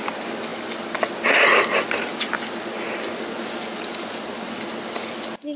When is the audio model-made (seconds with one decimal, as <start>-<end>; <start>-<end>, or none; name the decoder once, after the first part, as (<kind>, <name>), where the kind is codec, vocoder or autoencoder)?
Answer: none